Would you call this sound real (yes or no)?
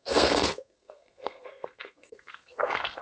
no